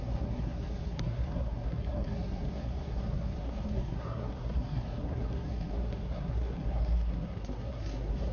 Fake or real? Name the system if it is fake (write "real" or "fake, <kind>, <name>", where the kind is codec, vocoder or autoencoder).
fake, codec, SNAC